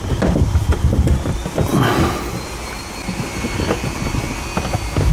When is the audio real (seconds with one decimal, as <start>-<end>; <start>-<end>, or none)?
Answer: 0.0-5.1